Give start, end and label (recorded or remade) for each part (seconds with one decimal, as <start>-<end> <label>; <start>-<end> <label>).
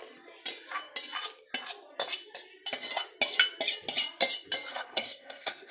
0.0-4.7 recorded; 4.7-5.7 remade